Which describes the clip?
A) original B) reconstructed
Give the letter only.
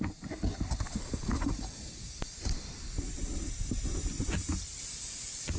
A